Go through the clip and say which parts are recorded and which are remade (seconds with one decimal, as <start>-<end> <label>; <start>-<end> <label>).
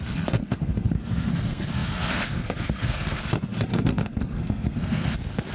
0.0-5.5 remade